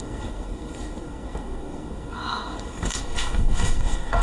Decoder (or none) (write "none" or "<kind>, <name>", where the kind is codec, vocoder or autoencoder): codec, SNAC